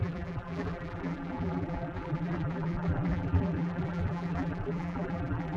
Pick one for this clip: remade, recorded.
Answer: remade